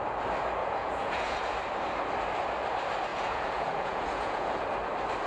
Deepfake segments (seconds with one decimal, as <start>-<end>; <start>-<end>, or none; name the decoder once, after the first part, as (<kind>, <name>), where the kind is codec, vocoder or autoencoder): 0.6-1.4 (vocoder, Vocos); 3.1-4.6